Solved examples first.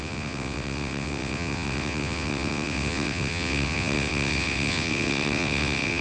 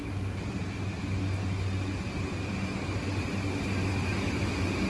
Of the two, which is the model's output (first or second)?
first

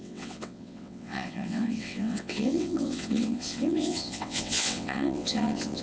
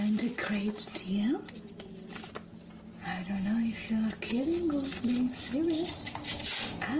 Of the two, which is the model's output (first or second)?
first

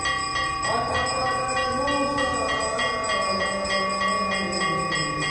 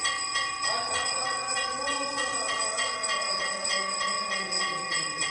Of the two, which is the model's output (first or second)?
second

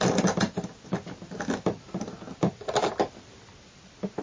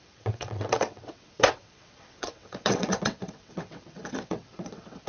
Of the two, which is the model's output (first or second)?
second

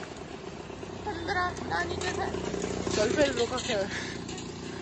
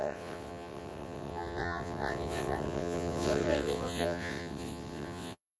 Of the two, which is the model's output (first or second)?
second